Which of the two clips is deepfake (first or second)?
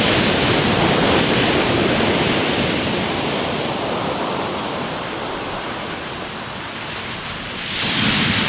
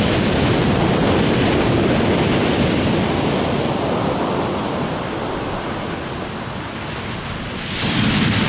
first